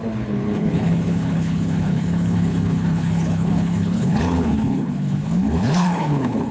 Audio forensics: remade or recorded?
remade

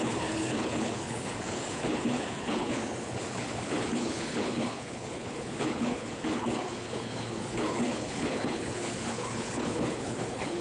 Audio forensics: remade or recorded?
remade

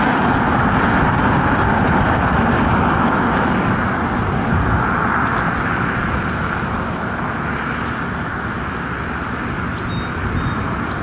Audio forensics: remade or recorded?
recorded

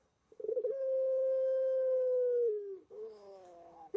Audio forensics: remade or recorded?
remade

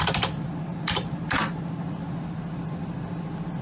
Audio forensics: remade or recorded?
recorded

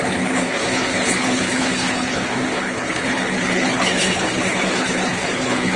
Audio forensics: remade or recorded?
remade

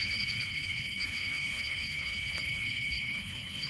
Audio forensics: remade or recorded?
remade